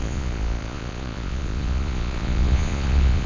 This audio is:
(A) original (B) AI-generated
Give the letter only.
B